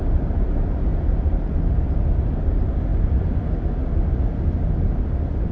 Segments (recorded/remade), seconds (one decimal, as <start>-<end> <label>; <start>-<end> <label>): 0.0-5.5 recorded